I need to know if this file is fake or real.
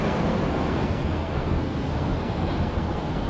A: fake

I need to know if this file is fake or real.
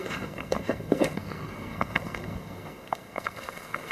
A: fake